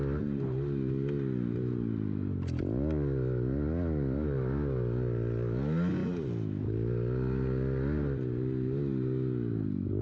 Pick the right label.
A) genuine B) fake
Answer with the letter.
A